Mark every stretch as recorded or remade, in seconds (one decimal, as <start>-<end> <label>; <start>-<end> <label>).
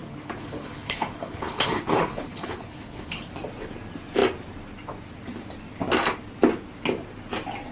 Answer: 0.0-3.3 remade; 3.3-7.7 recorded